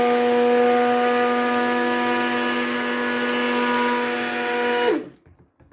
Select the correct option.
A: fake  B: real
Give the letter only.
B